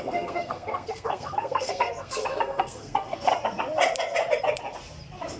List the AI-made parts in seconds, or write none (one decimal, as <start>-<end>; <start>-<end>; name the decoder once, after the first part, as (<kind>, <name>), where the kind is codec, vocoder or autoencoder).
0.0-3.3 (codec, SNAC)